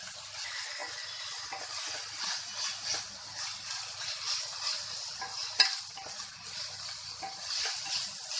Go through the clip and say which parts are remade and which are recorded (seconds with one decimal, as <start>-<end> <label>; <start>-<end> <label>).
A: 0.0-8.4 recorded

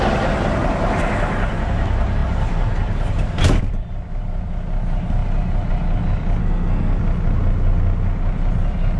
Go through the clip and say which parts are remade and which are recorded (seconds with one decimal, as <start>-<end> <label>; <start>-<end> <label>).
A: 0.0-6.4 recorded; 6.4-7.0 remade; 7.0-9.0 recorded

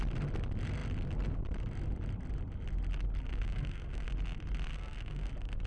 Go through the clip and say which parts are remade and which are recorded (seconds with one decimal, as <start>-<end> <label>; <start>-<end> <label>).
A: 0.0-3.3 recorded; 3.3-4.1 remade; 4.1-4.7 recorded; 4.7-5.3 remade; 5.3-5.7 recorded

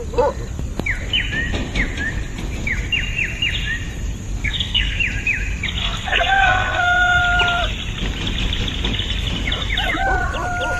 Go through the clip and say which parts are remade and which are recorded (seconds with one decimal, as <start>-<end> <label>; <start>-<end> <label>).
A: 0.0-4.4 recorded; 4.4-5.0 remade; 5.0-5.8 recorded; 5.8-7.2 remade; 7.2-10.8 recorded

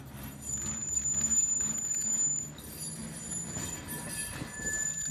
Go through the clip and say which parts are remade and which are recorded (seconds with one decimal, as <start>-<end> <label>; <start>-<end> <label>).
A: 0.0-5.1 recorded